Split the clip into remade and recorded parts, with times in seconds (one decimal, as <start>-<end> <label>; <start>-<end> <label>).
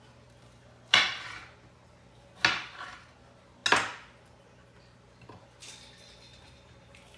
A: 0.0-7.2 recorded